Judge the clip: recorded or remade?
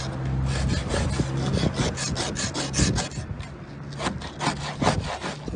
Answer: recorded